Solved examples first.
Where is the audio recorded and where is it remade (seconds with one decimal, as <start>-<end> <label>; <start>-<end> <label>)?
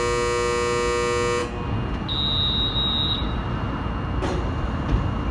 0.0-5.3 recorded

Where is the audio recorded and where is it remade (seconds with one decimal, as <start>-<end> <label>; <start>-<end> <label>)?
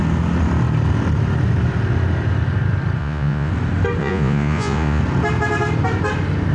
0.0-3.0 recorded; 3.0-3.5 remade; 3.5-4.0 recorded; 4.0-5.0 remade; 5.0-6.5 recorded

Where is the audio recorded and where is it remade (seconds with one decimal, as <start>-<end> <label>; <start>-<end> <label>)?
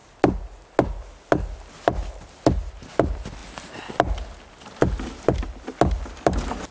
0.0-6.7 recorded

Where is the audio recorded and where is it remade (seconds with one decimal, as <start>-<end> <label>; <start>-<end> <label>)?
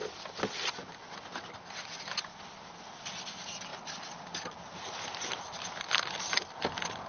0.0-7.1 recorded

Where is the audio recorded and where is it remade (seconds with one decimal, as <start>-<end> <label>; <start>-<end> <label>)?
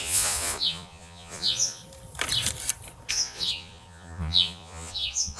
0.0-1.8 remade; 1.8-3.1 recorded; 3.1-5.4 remade